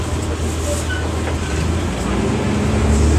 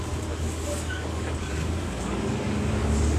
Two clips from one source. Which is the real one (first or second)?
first